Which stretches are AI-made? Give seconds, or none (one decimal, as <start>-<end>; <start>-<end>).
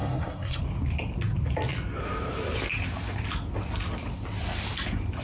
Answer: 0.0-0.6